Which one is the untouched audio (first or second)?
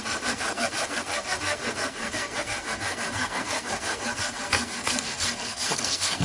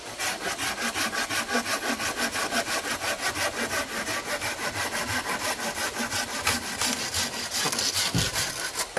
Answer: second